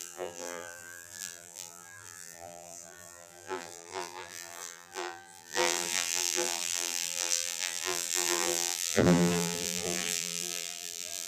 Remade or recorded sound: remade